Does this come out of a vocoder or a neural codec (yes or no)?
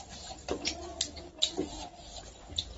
no